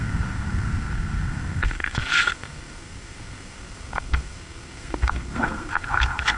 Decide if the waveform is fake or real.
fake